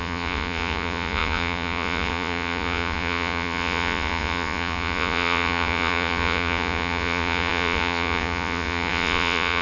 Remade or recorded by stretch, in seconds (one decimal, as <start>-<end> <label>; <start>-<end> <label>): 0.0-9.6 remade